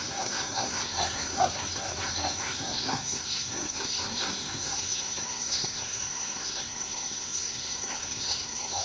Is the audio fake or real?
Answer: fake